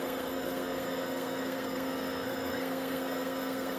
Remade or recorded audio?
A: remade